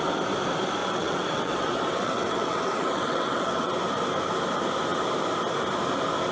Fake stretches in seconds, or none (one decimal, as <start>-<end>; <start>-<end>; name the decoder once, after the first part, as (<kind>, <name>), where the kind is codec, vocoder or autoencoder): 0.8-3.7 (vocoder, WaveNeXt)